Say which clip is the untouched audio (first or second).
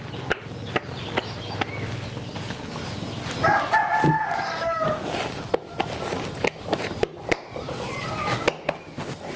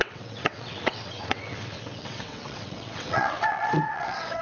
first